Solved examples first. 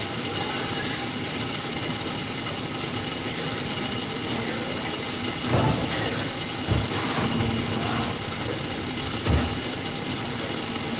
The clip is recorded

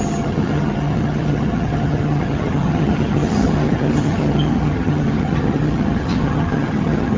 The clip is remade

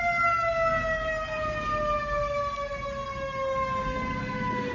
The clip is recorded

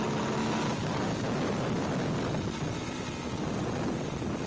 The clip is recorded